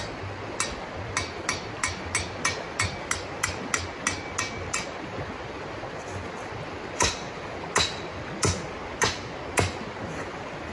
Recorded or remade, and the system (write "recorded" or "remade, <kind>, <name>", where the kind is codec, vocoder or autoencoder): recorded